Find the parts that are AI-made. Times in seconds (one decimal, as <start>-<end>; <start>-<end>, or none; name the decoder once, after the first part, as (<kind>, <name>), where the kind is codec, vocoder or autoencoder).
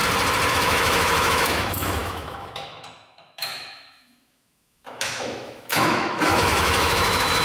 0.5-7.4 (autoencoder, DAC-VAE)